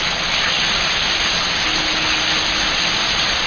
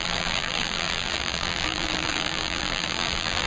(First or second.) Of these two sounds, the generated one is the second